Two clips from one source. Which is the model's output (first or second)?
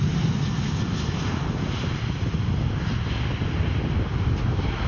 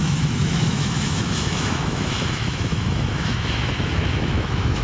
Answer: second